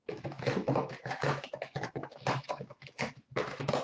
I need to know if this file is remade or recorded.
remade